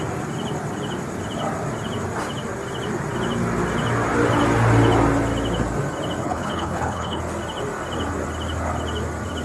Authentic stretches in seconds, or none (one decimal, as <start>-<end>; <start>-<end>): 0.0-6.2; 7.2-9.4